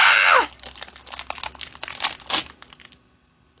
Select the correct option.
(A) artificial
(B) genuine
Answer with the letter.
B